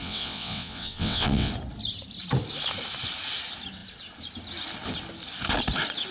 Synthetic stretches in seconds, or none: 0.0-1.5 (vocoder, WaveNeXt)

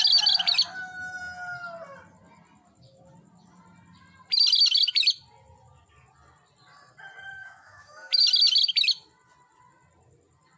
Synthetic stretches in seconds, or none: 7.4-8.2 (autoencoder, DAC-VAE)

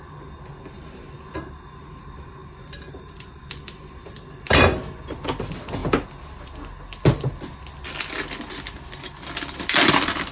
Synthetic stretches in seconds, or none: none

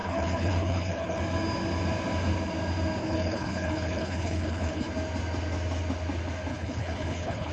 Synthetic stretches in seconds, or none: 0.0-1.2 (codec, HILCodec); 3.0-4.9; 6.5-7.5

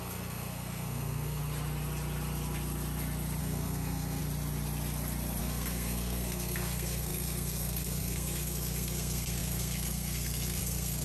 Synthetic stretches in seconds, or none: 0.0-1.4 (codec, SNAC); 3.4-4.2; 5.4-11.0

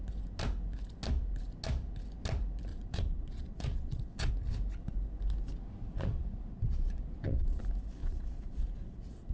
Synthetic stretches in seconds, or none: 2.7-4.3 (vocoder, Vocos); 5.8-7.6; 8.0-9.3

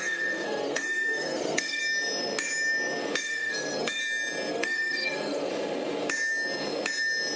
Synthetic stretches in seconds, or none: 0.0-1.8 (codec, SNAC); 3.2-4.0; 4.5-5.5